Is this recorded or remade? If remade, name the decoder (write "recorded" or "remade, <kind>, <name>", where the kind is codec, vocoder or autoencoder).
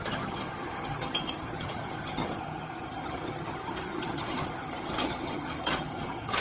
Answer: remade, vocoder, HiFi-GAN